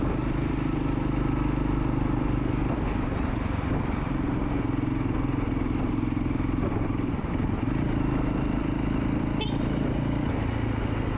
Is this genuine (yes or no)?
yes